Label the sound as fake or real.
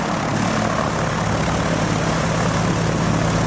real